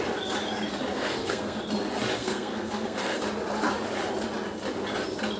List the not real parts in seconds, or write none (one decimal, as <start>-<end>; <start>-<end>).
0.9-1.6; 2.2-3.2